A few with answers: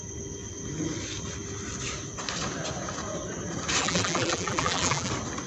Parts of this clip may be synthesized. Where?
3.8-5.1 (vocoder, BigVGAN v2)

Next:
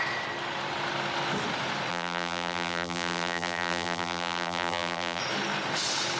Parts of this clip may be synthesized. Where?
1.9-5.2 (vocoder, BigVGAN v2)

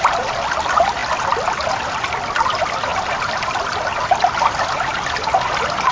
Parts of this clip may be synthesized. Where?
2.9-4.2 (vocoder, BigVGAN v2)

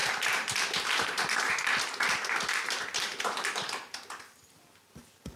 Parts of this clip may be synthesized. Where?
0.0-1.5 (vocoder, BigVGAN v2); 3.1-3.8

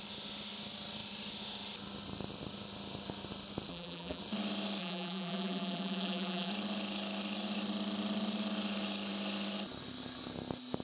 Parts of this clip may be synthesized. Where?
3.7-4.2 (vocoder, BigVGAN v2); 4.8-6.5

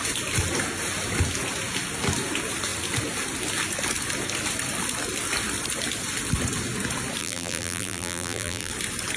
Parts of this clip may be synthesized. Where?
7.2-8.7 (vocoder, BigVGAN v2)

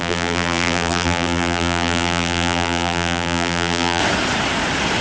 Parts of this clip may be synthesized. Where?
0.0-4.0 (vocoder, BigVGAN v2)